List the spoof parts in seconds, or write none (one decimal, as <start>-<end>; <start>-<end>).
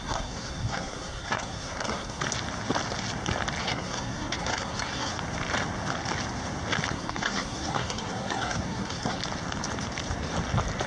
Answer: 0.0-2.2; 3.6-5.1; 6.9-9.2